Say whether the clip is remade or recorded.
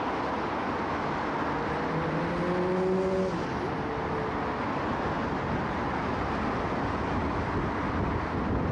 recorded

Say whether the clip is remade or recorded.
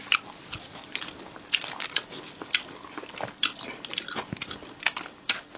recorded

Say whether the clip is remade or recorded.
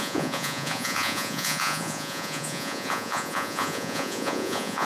remade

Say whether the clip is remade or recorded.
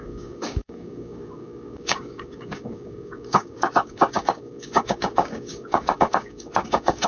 remade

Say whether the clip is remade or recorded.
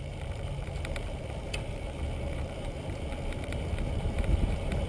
remade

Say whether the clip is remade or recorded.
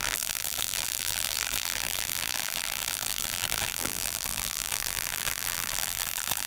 remade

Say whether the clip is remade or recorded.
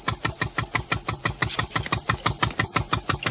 remade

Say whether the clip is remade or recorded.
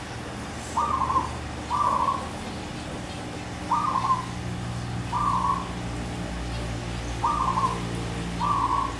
recorded